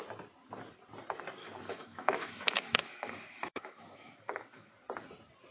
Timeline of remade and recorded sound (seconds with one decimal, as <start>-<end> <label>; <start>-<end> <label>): 0.0-1.4 recorded; 1.4-4.7 remade; 4.7-5.5 recorded